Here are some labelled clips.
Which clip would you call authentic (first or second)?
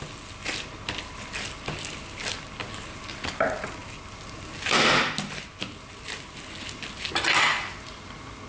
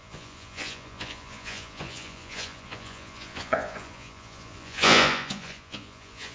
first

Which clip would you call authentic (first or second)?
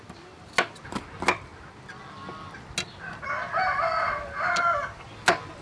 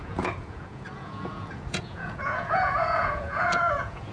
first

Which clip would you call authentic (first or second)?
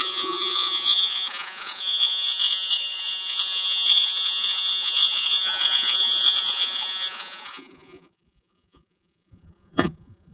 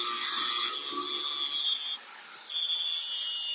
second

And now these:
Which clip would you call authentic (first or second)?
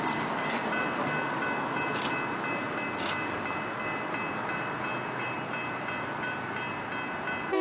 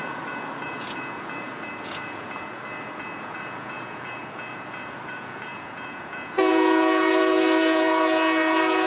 first